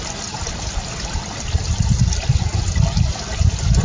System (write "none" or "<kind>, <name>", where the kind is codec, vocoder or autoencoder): none